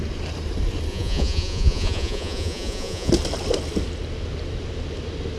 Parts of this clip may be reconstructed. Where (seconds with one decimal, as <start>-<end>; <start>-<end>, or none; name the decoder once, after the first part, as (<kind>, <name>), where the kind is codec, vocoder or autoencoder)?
0.9-3.1 (vocoder, Vocos)